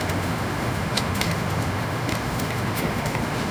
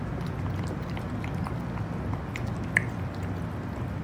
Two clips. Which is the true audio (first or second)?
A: second